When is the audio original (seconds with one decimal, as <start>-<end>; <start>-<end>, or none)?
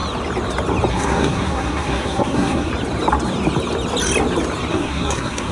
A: 0.0-0.9; 2.7-4.7